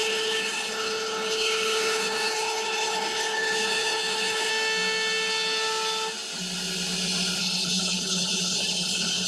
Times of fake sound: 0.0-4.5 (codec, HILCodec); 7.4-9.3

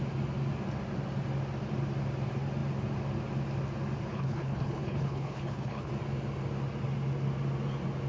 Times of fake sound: 4.1-5.9 (codec, HILCodec)

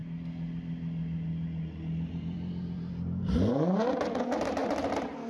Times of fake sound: none